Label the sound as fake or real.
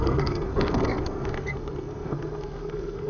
fake